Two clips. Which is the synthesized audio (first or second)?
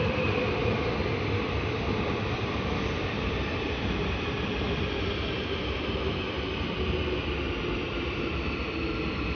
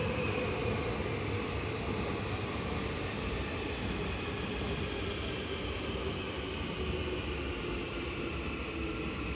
first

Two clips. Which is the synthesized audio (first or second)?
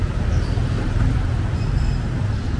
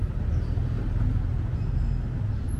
first